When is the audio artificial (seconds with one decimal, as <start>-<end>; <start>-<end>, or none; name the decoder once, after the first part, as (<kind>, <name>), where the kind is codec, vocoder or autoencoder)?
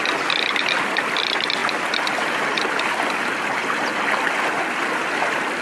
none